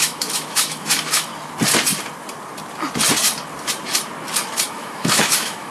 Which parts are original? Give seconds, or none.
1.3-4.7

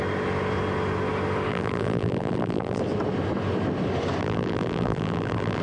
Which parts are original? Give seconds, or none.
0.0-1.5; 2.8-4.2